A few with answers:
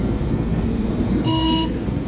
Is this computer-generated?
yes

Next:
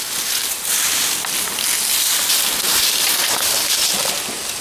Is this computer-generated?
no